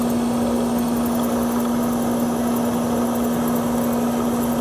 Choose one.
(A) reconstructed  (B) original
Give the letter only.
B